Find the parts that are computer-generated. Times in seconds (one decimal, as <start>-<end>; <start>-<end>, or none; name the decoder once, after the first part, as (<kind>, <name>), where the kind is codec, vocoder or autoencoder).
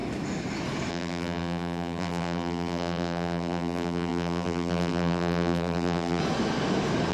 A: 0.9-6.2 (vocoder, BigVGAN v2)